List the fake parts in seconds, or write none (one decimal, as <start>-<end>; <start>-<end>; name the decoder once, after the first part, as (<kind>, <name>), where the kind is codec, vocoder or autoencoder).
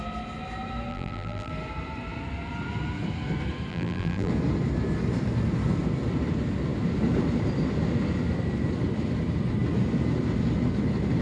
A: 0.9-1.5 (vocoder, BigVGAN v2); 3.7-4.3